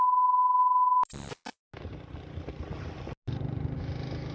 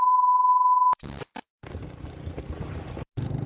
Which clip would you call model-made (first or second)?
second